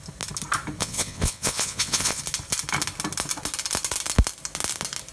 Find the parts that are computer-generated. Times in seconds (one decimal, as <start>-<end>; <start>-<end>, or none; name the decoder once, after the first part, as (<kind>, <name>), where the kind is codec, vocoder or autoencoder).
0.8-2.2 (vocoder, WaveNeXt)